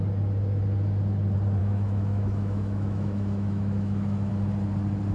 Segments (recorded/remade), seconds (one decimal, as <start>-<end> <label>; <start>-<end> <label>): 0.0-1.6 recorded; 1.6-4.3 remade; 4.3-5.1 recorded